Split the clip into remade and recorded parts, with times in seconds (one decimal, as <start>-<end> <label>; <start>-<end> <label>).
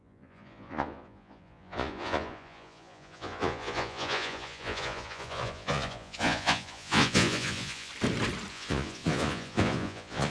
0.0-7.9 remade; 7.9-8.5 recorded; 8.5-10.3 remade